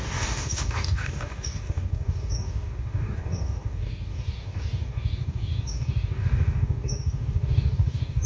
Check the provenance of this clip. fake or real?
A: fake